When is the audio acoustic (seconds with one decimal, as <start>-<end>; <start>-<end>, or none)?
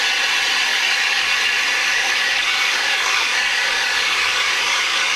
0.0-0.7; 1.3-1.8